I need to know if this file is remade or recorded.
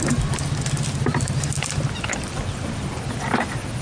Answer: recorded